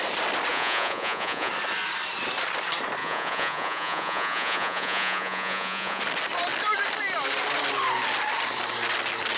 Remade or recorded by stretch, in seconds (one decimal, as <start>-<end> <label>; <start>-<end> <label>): 0.0-0.5 recorded; 0.5-1.5 remade; 1.5-3.0 recorded; 3.0-6.0 remade; 6.0-9.4 recorded